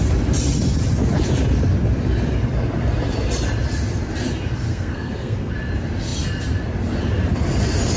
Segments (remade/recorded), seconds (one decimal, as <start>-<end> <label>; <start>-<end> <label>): 0.0-4.7 recorded; 4.7-5.5 remade; 5.5-8.0 recorded